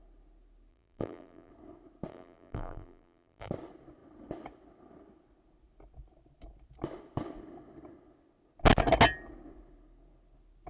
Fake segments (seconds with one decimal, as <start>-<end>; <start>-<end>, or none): 0.7-1.5; 2.1-3.5

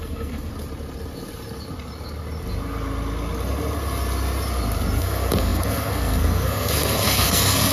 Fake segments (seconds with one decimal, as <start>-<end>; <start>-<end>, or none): 0.0-0.5; 5.0-7.7

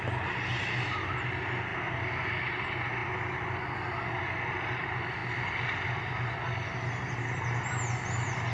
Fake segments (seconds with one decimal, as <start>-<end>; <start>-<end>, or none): 0.0-3.0; 4.5-5.2; 6.0-8.5

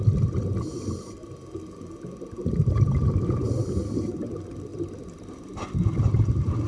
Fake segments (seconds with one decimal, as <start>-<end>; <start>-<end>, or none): none

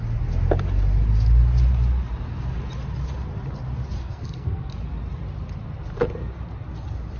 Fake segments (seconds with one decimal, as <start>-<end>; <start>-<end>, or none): 4.0-4.7